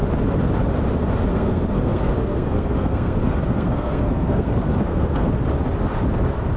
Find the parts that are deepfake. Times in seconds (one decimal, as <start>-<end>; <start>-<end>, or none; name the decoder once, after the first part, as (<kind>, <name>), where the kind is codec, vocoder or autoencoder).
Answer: 1.3-5.3 (codec, SNAC)